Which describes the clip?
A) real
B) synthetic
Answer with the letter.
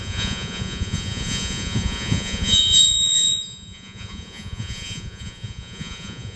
B